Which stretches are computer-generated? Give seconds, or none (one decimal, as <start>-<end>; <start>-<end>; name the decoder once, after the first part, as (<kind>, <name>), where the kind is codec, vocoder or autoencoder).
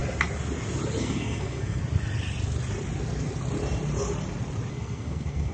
1.0-1.8 (codec, SNAC); 4.7-5.5